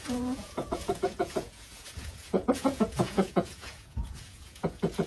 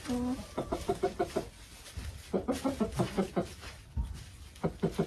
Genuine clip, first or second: second